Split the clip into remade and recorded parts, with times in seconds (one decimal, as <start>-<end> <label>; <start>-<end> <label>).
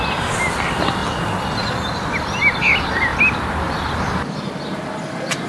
0.0-5.5 recorded